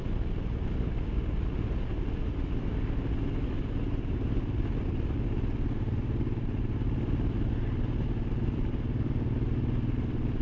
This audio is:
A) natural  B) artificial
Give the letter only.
A